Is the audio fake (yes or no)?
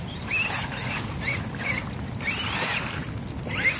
no